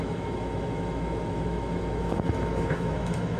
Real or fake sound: fake